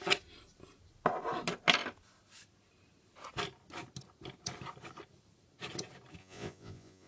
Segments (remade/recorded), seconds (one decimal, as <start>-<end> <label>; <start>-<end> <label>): 0.0-6.2 recorded; 6.2-7.1 remade